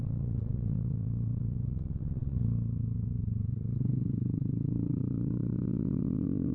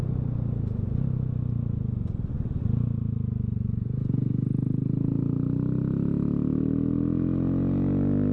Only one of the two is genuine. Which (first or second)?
second